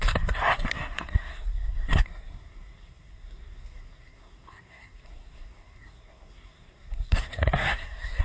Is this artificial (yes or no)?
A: yes